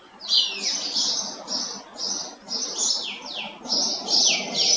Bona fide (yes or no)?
yes